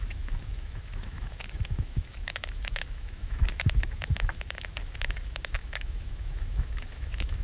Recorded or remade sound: remade